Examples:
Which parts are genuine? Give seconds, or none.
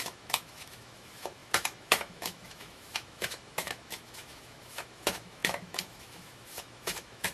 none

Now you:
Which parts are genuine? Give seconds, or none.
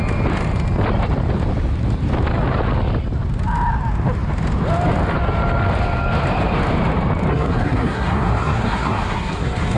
0.0-7.3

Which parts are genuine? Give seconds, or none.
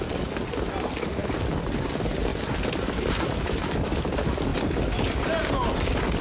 0.0-2.3; 4.1-6.2